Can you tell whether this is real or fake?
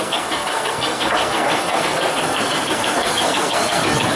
fake